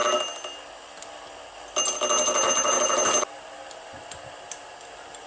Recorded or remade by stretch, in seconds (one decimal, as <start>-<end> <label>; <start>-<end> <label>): 0.0-5.3 recorded